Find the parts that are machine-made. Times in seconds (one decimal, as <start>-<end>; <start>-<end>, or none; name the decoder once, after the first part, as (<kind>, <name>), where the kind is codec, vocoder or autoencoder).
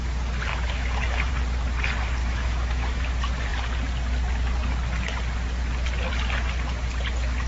0.5-1.3 (autoencoder, DAC-VAE); 2.2-3.1